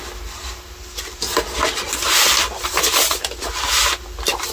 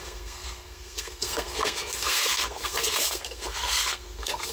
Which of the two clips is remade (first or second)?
second